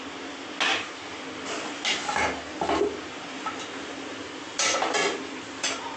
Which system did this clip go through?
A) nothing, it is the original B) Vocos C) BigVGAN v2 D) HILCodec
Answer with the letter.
A